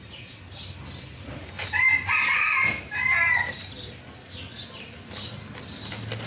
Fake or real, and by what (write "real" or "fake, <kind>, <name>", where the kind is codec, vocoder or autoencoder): real